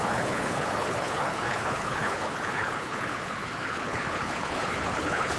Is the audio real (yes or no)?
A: no